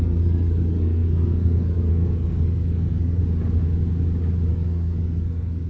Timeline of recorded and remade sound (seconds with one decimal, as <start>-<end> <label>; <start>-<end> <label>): 0.0-3.2 remade; 3.2-4.5 recorded; 4.5-5.7 remade